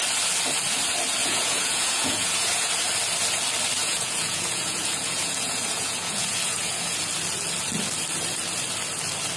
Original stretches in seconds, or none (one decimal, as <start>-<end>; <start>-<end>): 0.0-1.2; 2.7-3.8; 7.1-9.4